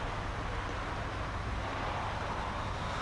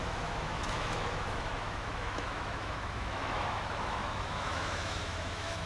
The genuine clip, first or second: first